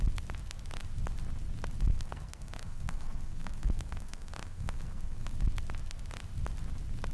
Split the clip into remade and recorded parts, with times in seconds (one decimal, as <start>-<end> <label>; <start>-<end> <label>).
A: 0.0-1.9 recorded; 1.9-5.3 remade; 5.3-7.1 recorded